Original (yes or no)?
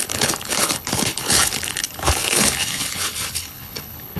no